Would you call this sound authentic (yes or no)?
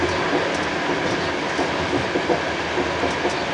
yes